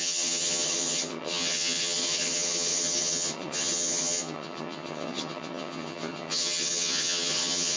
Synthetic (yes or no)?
yes